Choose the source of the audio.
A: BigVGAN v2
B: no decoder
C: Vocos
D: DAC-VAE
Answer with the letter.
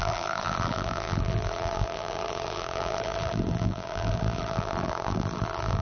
A